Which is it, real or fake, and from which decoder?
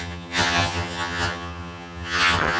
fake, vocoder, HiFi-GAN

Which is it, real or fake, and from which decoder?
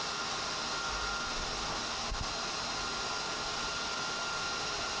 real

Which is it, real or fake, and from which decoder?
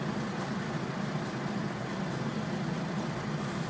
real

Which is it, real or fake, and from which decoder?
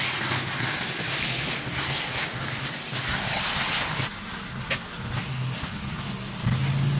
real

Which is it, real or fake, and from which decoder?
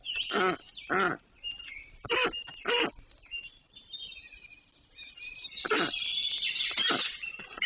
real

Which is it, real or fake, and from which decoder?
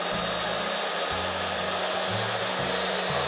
real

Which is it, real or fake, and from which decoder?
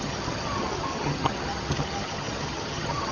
fake, vocoder, HiFi-GAN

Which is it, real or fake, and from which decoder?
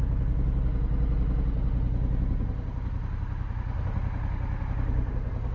real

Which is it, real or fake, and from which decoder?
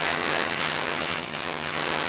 fake, vocoder, HiFi-GAN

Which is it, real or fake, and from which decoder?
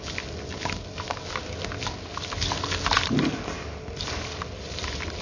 real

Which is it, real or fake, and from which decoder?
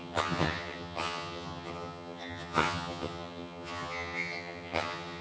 fake, vocoder, HiFi-GAN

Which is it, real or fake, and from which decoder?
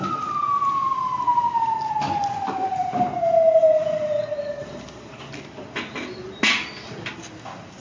real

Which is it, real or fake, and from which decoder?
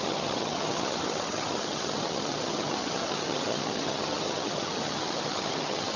fake, vocoder, HiFi-GAN